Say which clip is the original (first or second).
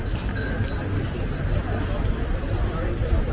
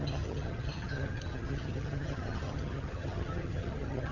first